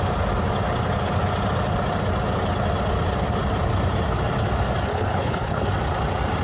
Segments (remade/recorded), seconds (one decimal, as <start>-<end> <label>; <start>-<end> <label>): 0.0-4.9 recorded; 4.9-5.6 remade; 5.6-6.4 recorded